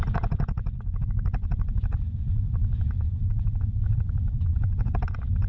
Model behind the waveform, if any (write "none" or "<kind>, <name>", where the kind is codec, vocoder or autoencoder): vocoder, Vocos